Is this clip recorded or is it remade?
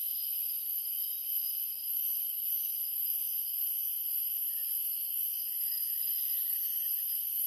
remade